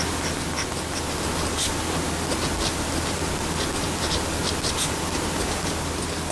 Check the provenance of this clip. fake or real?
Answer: real